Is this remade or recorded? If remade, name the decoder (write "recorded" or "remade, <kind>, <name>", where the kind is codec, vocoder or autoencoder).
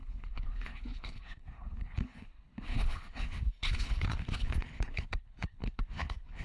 remade, codec, HILCodec